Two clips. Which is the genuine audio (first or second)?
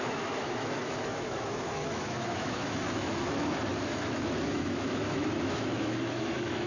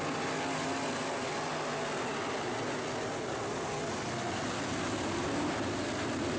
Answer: second